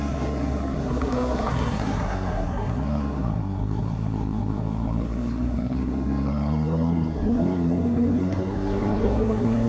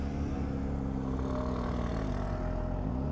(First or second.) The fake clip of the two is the first